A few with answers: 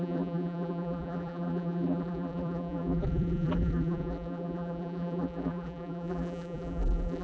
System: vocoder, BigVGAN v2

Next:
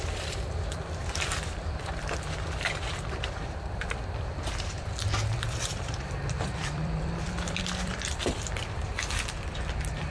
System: vocoder, BigVGAN v2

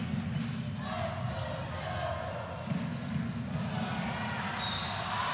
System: none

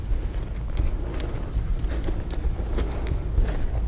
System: none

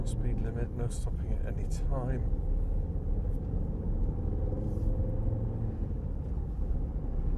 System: none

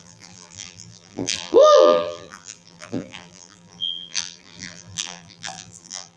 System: vocoder, BigVGAN v2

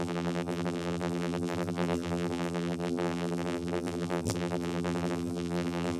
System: vocoder, BigVGAN v2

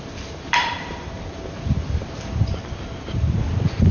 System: vocoder, BigVGAN v2